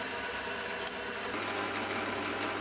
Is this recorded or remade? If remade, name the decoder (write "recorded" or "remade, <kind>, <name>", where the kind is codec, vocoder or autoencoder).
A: recorded